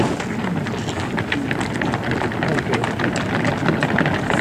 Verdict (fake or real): real